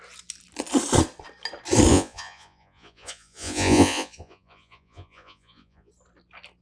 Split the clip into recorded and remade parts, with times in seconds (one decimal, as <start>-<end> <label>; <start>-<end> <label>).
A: 0.0-1.9 recorded; 1.9-5.9 remade; 5.9-6.6 recorded